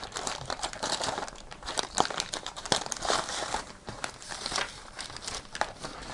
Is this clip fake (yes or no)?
yes